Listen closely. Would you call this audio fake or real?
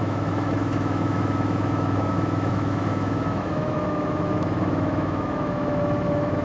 fake